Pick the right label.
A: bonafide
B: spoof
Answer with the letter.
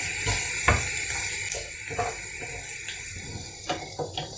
A